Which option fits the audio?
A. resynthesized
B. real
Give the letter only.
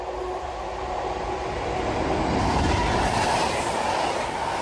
B